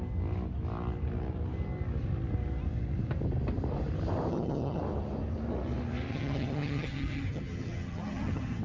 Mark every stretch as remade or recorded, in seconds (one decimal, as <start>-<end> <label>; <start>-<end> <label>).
0.0-4.3 recorded; 4.3-4.8 remade; 4.8-6.1 recorded; 6.1-8.6 remade

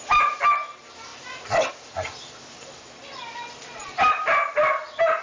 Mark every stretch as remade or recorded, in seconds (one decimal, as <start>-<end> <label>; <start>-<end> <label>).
0.0-5.2 recorded

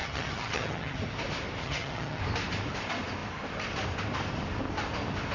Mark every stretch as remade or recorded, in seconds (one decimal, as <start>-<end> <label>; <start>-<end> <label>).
0.0-1.0 remade; 1.0-1.6 recorded; 1.6-2.2 remade; 2.2-5.3 recorded

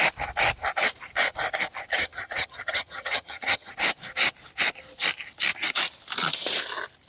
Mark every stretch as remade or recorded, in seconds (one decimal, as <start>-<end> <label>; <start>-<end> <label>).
0.0-1.9 recorded; 1.9-3.7 remade; 3.7-7.1 recorded

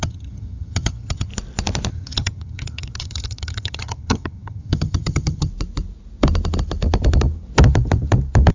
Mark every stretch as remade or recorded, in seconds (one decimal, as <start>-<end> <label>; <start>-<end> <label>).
0.0-1.3 remade; 1.3-1.9 recorded; 1.9-5.5 remade; 5.5-8.5 recorded

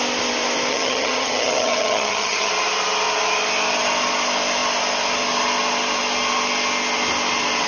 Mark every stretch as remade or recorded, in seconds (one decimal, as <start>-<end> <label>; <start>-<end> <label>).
0.0-0.7 recorded; 0.7-2.5 remade; 2.5-7.7 recorded

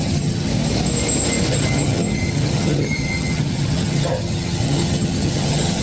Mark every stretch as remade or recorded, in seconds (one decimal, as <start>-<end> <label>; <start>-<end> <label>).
0.0-0.5 remade; 0.5-1.5 recorded; 1.5-5.8 remade